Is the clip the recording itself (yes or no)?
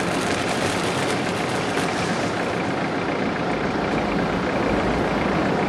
yes